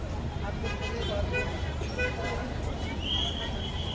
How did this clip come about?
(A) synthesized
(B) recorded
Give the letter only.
A